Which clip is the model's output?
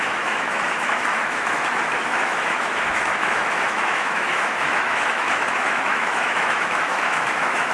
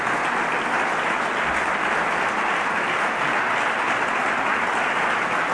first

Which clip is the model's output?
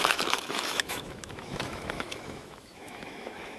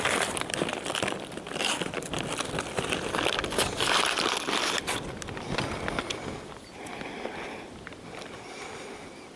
first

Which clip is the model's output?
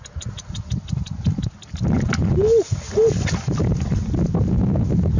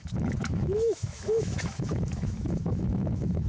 second